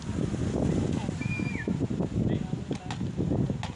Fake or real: real